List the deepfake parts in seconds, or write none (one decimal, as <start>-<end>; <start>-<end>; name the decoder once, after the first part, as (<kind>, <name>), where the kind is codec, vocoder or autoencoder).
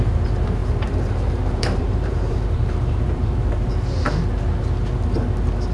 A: 0.6-3.7 (vocoder, BigVGAN v2)